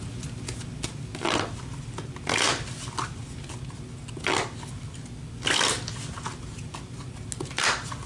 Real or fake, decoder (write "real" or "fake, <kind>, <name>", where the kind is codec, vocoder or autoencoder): real